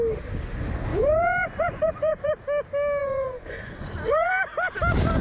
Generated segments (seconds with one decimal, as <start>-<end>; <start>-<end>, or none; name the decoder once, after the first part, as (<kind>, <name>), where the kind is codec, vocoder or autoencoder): 0.9-2.3 (vocoder, Vocos); 3.0-4.3